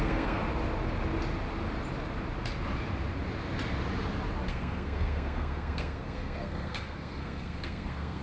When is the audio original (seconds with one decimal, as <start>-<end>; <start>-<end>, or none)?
0.4-4.5